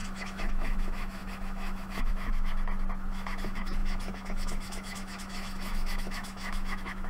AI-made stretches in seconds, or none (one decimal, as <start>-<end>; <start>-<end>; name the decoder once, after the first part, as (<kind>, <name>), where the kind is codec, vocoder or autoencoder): 0.0-2.5 (autoencoder, DAC-VAE); 3.1-7.1